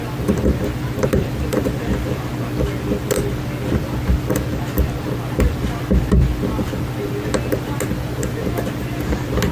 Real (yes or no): yes